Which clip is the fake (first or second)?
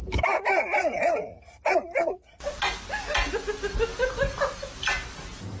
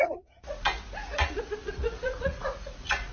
second